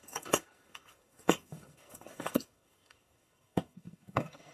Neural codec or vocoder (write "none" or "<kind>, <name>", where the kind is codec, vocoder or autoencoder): codec, SNAC